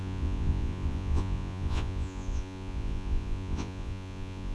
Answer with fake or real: fake